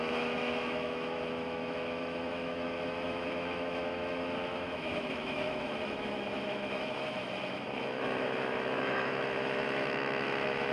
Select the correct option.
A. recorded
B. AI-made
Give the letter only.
B